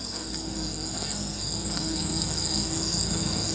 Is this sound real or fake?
fake